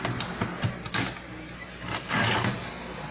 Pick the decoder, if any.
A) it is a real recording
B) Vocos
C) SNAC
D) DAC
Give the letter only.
A